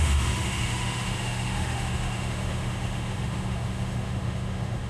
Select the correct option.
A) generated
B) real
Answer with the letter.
A